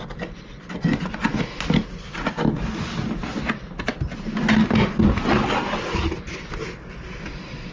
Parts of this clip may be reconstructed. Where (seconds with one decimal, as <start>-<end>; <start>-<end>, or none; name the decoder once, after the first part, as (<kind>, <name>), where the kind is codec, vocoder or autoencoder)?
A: none